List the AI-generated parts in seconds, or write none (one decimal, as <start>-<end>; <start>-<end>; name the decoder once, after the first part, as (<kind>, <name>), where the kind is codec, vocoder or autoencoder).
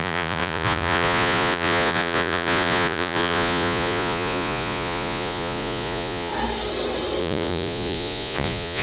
0.0-6.3 (vocoder, Vocos); 7.2-8.8